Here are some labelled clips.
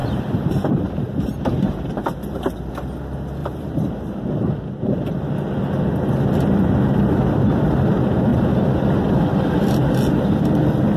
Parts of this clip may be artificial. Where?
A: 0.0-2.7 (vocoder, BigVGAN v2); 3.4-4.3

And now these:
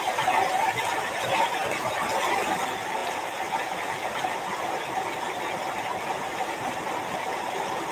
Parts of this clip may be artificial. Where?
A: none

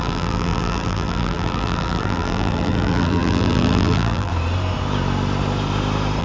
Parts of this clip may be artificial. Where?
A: 0.0-4.3 (vocoder, BigVGAN v2)

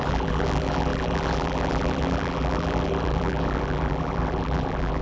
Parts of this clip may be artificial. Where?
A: 0.0-5.0 (vocoder, BigVGAN v2)

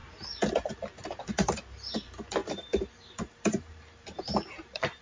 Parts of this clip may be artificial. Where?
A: 0.7-5.0 (vocoder, BigVGAN v2)

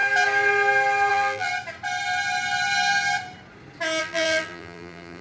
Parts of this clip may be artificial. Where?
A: 1.1-1.5 (vocoder, BigVGAN v2); 4.0-5.2